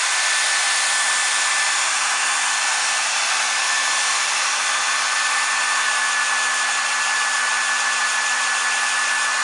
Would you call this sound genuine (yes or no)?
yes